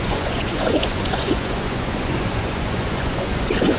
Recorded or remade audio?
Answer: remade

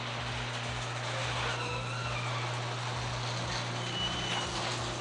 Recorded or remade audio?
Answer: recorded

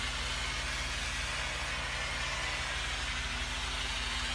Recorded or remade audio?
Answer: recorded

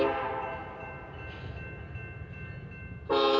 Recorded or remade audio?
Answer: recorded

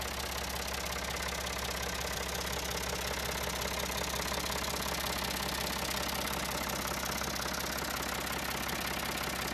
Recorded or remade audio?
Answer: recorded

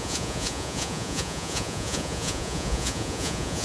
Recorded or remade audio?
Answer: remade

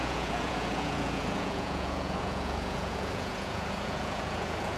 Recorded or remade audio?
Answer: remade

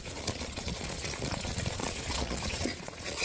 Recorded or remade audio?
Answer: remade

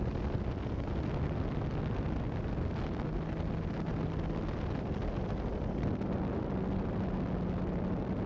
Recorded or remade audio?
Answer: recorded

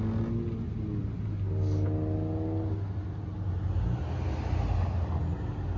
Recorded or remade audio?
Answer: recorded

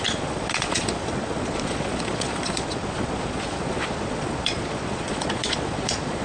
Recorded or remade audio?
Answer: remade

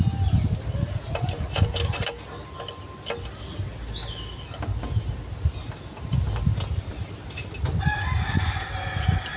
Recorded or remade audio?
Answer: recorded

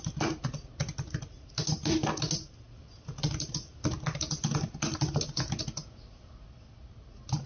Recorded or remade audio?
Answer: recorded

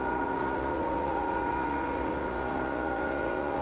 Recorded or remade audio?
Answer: remade